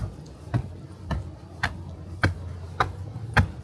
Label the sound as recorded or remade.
recorded